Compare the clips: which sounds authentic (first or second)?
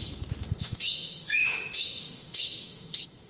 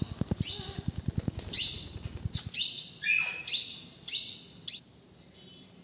second